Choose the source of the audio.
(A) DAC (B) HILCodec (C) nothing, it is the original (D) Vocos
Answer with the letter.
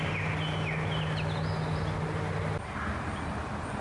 C